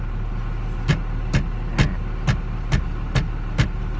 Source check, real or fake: real